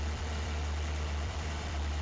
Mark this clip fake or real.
fake